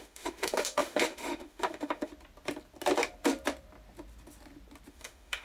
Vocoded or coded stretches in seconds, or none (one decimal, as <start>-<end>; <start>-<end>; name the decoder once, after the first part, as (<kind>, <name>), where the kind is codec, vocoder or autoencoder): 0.0-2.1 (autoencoder, DAC-VAE); 4.9-5.4